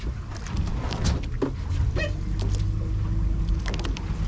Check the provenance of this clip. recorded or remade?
recorded